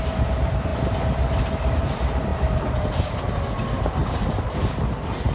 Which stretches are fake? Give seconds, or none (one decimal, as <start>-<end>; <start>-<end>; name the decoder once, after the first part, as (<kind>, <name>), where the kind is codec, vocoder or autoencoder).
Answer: 4.0-5.3 (vocoder, BigVGAN v2)